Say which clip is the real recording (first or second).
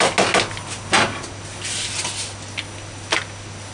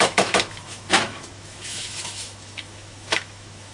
first